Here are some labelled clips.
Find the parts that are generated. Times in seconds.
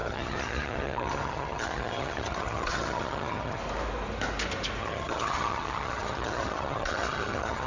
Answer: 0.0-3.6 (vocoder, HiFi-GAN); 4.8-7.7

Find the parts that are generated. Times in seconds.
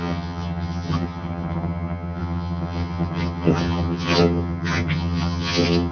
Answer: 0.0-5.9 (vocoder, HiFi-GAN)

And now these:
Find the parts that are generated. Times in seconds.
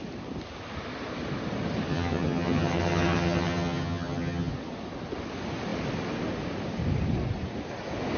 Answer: 1.9-4.5 (vocoder, HiFi-GAN)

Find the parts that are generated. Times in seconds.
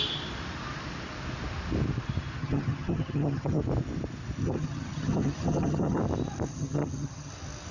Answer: 2.4-3.6 (vocoder, HiFi-GAN); 4.4-6.0; 6.5-7.3